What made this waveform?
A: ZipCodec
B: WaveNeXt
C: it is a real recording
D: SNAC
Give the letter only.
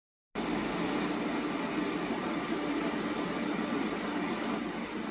C